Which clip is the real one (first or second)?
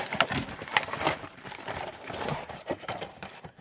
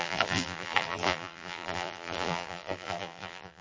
first